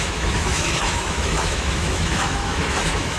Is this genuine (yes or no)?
no